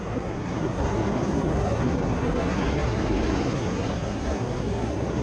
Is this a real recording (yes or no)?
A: no